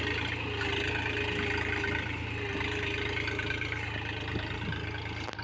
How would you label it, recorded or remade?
recorded